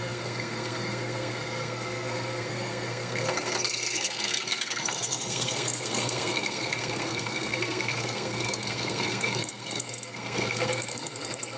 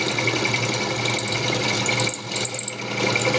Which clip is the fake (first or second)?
first